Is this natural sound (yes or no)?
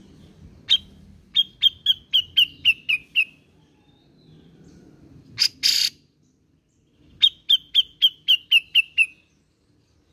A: yes